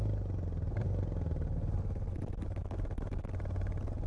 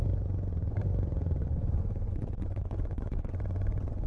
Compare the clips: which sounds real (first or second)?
first